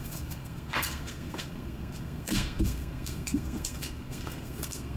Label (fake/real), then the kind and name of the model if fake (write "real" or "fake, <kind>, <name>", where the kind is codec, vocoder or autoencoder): fake, codec, SNAC